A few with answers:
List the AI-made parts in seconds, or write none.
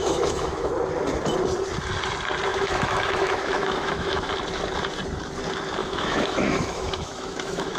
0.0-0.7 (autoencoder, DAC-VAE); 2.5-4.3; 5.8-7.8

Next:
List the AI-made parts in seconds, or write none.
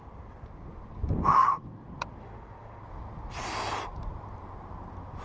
2.2-2.8 (autoencoder, DAC-VAE)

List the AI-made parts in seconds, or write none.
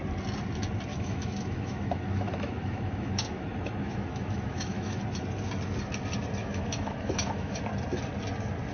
0.9-5.0 (autoencoder, DAC-VAE); 6.4-7.6